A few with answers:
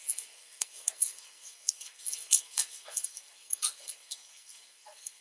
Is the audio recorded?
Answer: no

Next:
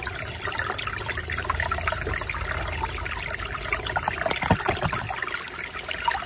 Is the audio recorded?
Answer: yes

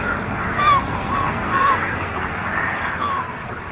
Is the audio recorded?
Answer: no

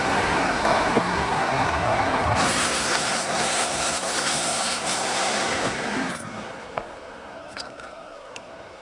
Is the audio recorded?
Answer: no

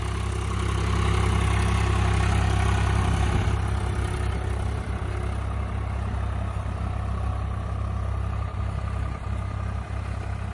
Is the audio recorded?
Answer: yes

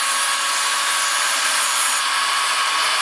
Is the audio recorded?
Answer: yes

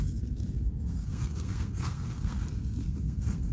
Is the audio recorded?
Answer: no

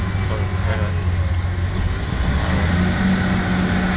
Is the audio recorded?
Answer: yes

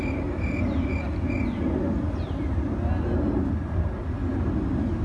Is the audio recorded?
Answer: yes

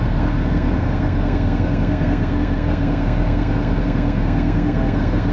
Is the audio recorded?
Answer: no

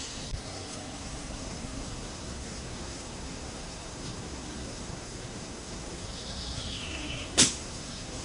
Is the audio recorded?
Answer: no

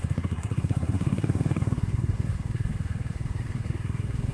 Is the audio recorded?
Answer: no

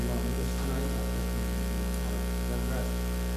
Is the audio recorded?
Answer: yes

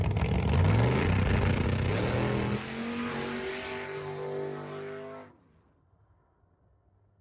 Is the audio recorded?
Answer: yes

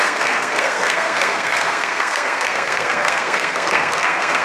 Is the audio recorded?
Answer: no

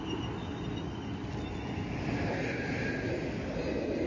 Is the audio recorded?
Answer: yes